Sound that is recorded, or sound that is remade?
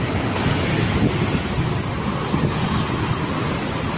recorded